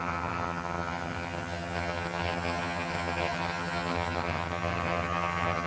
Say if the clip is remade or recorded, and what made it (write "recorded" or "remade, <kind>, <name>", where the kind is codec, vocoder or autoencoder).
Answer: remade, vocoder, HiFi-GAN